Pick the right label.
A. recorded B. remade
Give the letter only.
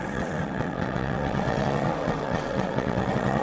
B